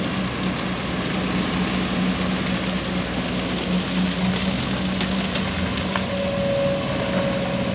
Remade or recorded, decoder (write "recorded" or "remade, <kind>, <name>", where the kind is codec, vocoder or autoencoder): recorded